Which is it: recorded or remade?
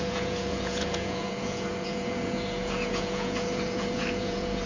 remade